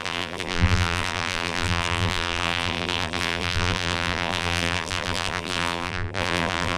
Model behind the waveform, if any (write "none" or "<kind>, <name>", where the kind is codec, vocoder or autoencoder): vocoder, BigVGAN v2